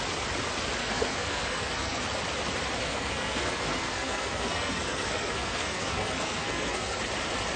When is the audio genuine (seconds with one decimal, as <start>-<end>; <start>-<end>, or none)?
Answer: 0.0-0.8; 2.0-2.8; 7.0-7.6